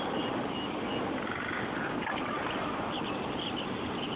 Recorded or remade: recorded